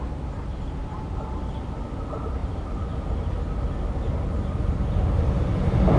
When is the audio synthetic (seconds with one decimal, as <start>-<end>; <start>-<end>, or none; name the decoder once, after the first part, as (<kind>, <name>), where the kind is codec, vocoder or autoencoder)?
none